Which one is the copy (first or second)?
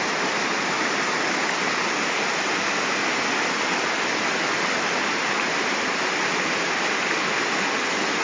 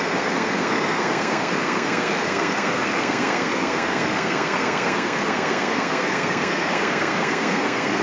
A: second